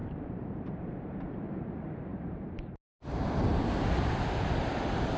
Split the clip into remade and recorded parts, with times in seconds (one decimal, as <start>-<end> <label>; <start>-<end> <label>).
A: 0.0-1.7 remade; 1.7-2.1 recorded; 2.1-3.6 remade; 3.6-5.2 recorded